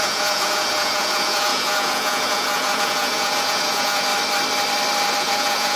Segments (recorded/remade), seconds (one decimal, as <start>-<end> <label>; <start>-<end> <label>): 0.0-4.1 remade; 4.1-5.2 recorded; 5.2-5.8 remade